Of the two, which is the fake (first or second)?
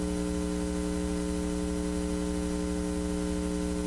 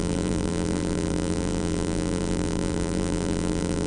second